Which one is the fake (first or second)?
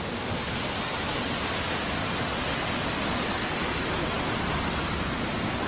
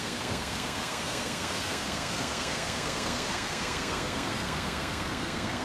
second